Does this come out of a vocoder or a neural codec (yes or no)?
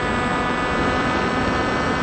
no